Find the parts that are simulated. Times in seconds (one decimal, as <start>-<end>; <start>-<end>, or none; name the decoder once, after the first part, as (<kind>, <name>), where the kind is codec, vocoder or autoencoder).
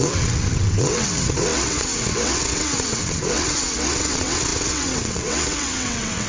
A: 0.0-6.3 (vocoder, WaveNeXt)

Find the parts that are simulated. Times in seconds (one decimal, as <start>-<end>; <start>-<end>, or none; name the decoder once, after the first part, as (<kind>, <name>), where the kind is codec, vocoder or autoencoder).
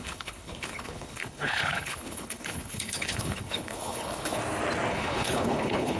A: 0.0-4.4 (codec, HILCodec); 4.9-6.0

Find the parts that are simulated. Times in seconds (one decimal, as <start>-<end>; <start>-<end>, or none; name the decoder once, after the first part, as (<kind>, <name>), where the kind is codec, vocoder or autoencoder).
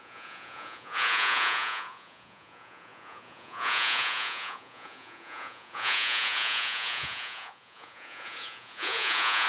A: 0.0-9.5 (vocoder, Vocos)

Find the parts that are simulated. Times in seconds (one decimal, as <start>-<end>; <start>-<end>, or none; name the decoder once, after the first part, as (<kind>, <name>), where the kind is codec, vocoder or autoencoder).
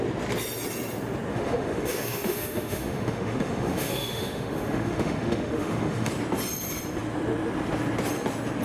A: 1.3-6.1 (autoencoder, DAC-VAE)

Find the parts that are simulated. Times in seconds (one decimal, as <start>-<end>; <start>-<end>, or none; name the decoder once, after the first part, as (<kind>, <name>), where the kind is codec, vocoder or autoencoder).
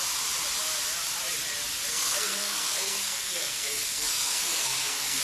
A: 1.9-5.2 (codec, SNAC)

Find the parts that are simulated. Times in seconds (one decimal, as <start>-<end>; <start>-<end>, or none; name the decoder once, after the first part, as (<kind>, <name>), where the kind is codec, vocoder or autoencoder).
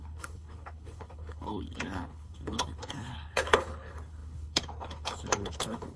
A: 0.0-6.0 (codec, HILCodec)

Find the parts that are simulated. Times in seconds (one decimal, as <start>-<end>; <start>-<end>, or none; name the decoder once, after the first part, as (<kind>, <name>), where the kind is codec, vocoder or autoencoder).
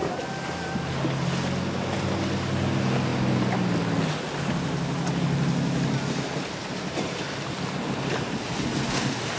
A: none